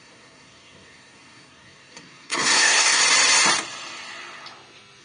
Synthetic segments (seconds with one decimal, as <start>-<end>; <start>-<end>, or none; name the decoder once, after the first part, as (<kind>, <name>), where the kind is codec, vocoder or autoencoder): 0.0-3.0 (codec, SNAC)